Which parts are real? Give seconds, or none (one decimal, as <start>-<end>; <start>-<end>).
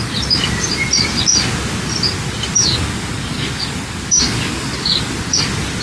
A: 0.0-2.6; 5.1-5.8